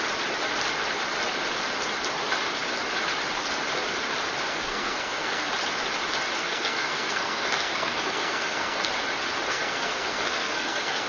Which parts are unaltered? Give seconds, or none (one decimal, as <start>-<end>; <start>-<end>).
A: 0.0-4.5; 5.5-6.4; 8.9-9.5